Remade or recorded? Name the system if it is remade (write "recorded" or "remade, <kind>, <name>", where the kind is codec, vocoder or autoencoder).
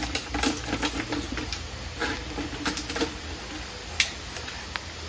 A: recorded